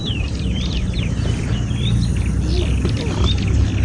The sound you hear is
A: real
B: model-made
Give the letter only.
B